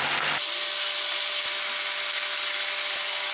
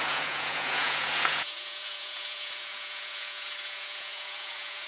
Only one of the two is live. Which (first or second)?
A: first